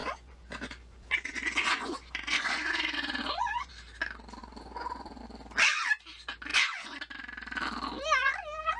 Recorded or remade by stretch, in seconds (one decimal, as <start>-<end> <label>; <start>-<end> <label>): 0.0-3.7 remade; 3.7-4.4 recorded; 4.4-5.2 remade; 5.2-6.5 recorded; 6.5-7.0 remade; 7.0-8.8 recorded